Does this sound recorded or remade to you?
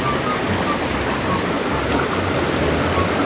recorded